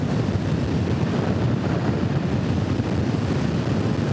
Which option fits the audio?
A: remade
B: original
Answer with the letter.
B